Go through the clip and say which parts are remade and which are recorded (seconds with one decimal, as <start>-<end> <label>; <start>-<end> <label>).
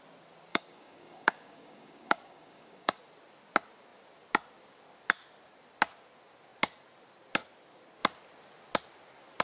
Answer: 0.0-0.5 recorded; 0.5-3.0 remade; 3.0-9.4 recorded